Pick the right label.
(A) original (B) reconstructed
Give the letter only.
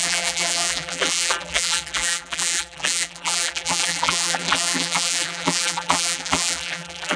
B